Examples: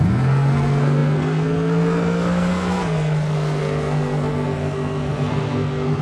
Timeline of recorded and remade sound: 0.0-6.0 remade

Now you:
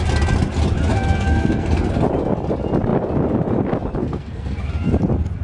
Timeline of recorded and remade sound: 0.0-0.9 recorded; 0.9-1.9 remade; 1.9-4.0 recorded; 4.0-4.7 remade; 4.7-5.4 recorded

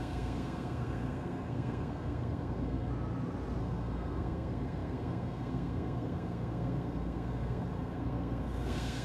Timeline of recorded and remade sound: 0.0-2.9 remade; 2.9-3.6 recorded; 3.6-9.0 remade

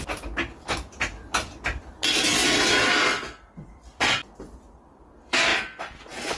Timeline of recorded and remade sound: 0.0-6.4 remade